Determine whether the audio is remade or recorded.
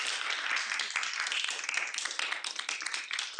recorded